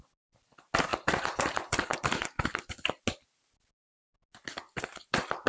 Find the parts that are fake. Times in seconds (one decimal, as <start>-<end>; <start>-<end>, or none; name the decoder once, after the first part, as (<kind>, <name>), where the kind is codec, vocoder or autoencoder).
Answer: 0.9-3.0 (vocoder, BigVGAN v2)